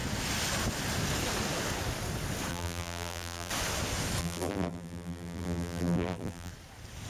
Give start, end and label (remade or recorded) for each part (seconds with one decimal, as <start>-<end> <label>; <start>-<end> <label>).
0.0-2.5 recorded; 2.5-3.5 remade; 3.5-4.2 recorded; 4.2-6.5 remade; 6.5-7.1 recorded

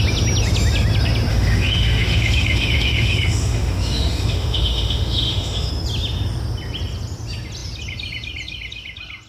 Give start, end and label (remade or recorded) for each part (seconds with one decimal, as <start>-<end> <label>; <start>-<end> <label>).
0.0-1.3 recorded; 1.3-5.7 remade; 5.7-9.3 recorded

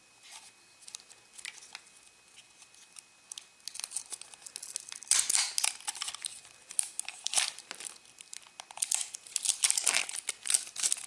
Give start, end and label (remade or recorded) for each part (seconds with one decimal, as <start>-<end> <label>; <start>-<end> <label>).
0.0-6.4 recorded; 6.4-7.7 remade; 7.7-11.1 recorded

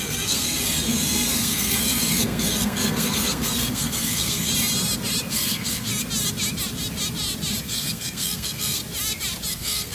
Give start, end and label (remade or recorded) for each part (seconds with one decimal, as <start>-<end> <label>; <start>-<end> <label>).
0.0-4.5 remade; 4.5-5.3 recorded; 5.3-5.9 remade; 5.9-7.6 recorded; 7.6-8.8 remade; 8.8-9.5 recorded; 9.5-9.9 remade

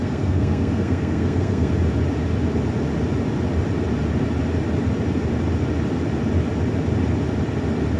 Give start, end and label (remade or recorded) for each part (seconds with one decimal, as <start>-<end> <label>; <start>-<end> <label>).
0.0-1.7 remade; 1.7-8.0 recorded

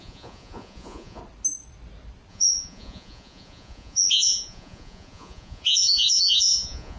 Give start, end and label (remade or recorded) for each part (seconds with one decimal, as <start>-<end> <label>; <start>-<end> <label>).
0.0-1.2 remade; 1.2-2.3 recorded; 2.3-7.0 remade